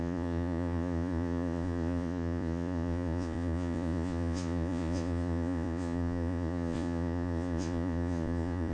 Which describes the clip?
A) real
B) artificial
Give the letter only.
B